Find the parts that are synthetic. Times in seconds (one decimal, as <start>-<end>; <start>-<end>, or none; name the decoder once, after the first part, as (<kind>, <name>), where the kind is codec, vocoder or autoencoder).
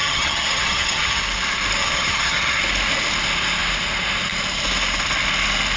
0.0-1.2 (vocoder, HiFi-GAN); 1.8-2.6